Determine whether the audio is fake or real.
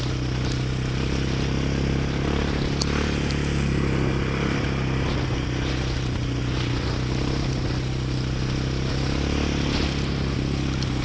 real